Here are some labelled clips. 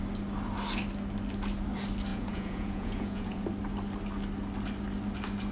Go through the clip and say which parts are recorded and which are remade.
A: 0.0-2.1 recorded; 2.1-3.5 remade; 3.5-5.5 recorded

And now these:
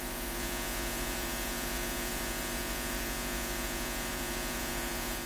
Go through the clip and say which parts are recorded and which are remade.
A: 0.0-5.3 remade

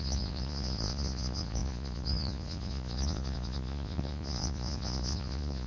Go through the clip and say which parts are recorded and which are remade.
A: 0.0-5.7 remade

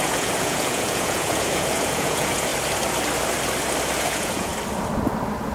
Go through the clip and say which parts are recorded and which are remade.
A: 0.0-2.5 remade; 2.5-4.0 recorded; 4.0-4.5 remade; 4.5-5.5 recorded

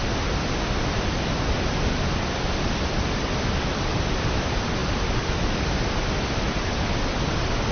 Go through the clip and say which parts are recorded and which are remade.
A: 0.0-7.7 recorded

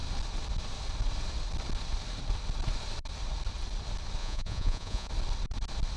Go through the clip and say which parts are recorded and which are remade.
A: 0.0-4.2 recorded; 4.2-5.1 remade; 5.1-6.0 recorded

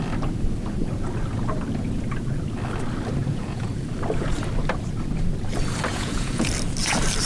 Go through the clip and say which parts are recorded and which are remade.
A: 0.0-3.2 recorded; 3.2-3.7 remade; 3.7-5.9 recorded; 5.9-6.5 remade; 6.5-7.3 recorded